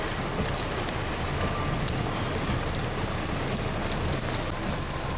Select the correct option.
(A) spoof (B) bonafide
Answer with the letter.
B